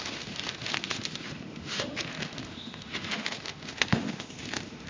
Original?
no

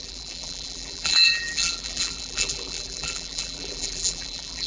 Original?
no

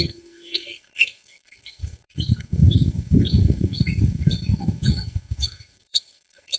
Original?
no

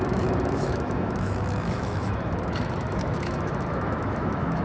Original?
no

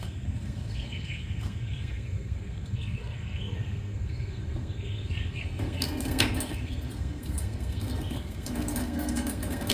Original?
no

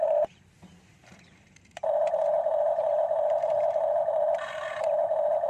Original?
no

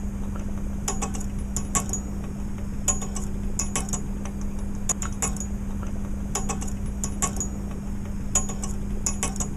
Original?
yes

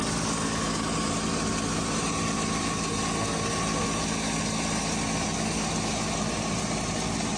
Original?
yes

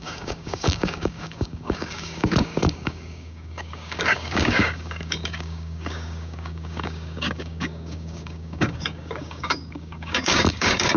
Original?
no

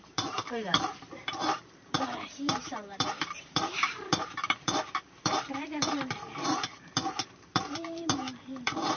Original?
no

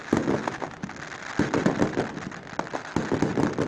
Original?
yes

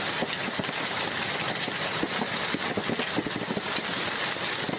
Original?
yes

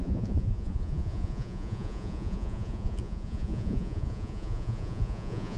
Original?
no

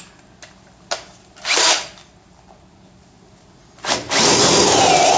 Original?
yes